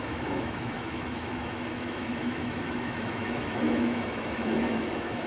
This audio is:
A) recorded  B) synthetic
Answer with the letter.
B